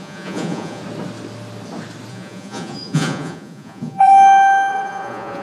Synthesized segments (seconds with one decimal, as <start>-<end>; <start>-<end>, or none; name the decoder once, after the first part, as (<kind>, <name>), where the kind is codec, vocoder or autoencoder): 0.0-0.8 (vocoder, Vocos); 2.1-4.1; 4.7-5.4